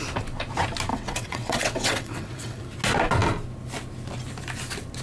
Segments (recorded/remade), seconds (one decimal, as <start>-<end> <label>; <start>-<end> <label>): 0.0-0.9 recorded; 0.9-2.6 remade; 2.6-5.0 recorded